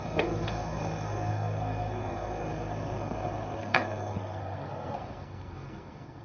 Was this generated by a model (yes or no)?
yes